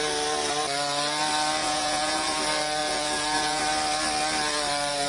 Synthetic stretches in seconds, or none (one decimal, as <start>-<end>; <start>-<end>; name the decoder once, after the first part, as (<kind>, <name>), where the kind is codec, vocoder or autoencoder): 1.6-2.4 (vocoder, Vocos); 2.8-3.6